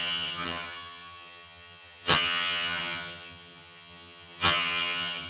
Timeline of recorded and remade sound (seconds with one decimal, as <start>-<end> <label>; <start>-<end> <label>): 0.0-5.3 remade